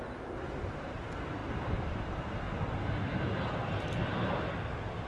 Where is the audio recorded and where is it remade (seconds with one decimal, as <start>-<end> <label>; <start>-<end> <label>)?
0.0-5.1 recorded